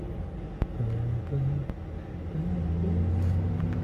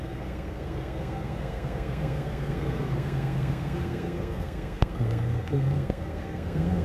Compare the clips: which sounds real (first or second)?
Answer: first